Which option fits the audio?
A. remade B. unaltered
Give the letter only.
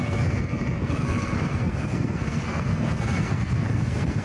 A